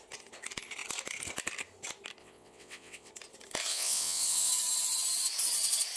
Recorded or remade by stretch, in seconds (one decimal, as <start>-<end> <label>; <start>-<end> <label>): 0.0-2.2 recorded; 2.2-3.1 remade; 3.1-3.7 recorded; 3.7-4.5 remade; 4.5-6.0 recorded